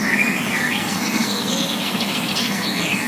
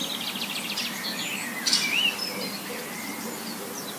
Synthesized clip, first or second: first